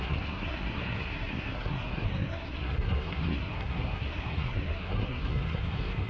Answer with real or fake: fake